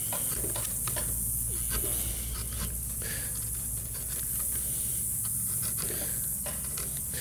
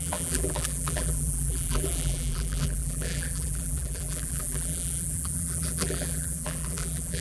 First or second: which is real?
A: first